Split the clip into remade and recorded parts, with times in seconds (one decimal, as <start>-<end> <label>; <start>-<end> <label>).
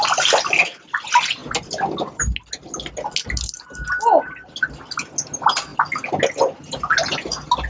0.0-7.7 recorded